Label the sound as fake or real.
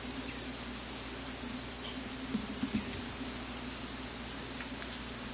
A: real